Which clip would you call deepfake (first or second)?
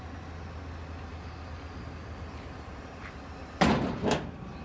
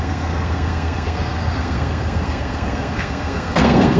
second